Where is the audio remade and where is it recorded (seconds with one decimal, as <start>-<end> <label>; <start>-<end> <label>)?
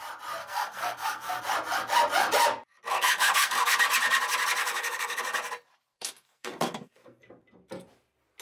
0.0-0.4 recorded; 0.4-1.4 remade; 1.4-2.9 recorded; 2.9-3.8 remade; 3.8-4.6 recorded; 4.6-5.2 remade; 5.2-5.9 recorded; 5.9-7.2 remade; 7.2-8.4 recorded